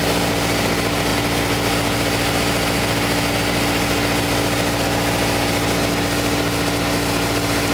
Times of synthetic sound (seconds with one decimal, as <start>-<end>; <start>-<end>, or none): none